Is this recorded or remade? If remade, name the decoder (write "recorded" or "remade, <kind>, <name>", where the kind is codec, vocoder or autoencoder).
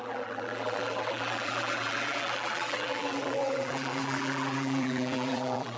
remade, vocoder, BigVGAN v2